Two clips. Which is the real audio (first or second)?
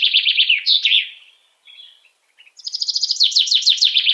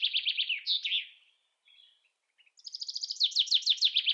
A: second